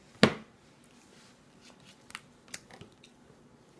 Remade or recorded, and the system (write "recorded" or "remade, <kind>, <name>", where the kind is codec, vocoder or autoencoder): recorded